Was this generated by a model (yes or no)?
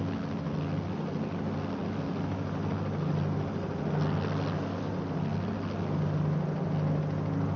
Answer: no